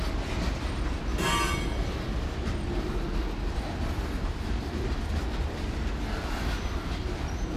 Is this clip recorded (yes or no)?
yes